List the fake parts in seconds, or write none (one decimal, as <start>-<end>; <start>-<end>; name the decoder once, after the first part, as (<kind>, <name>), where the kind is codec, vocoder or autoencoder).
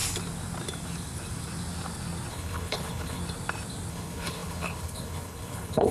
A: 2.3-3.2 (codec, HILCodec); 3.9-5.9